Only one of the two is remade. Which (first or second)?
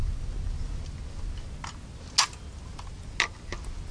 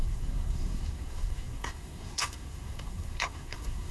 second